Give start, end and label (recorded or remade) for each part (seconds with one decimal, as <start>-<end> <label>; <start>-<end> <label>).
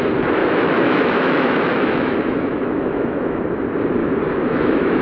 0.0-0.4 recorded; 0.4-3.4 remade; 3.4-4.0 recorded; 4.0-5.0 remade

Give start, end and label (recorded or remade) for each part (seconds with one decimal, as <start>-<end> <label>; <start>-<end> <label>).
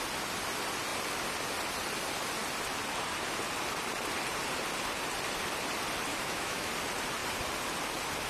0.0-6.1 recorded; 6.1-6.7 remade; 6.7-8.3 recorded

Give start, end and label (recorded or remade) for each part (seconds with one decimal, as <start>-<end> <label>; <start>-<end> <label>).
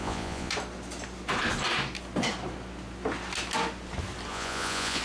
0.0-0.5 remade; 0.5-4.3 recorded; 4.3-5.0 remade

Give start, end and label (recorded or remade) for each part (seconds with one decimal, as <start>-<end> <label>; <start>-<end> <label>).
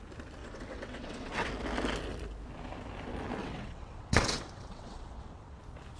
0.0-0.4 recorded; 0.4-1.5 remade; 1.5-3.4 recorded; 3.4-5.6 remade; 5.6-6.0 recorded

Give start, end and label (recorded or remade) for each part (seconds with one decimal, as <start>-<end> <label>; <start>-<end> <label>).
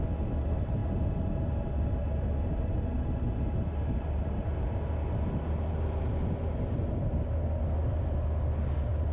0.0-9.1 recorded